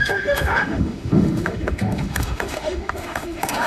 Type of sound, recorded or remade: remade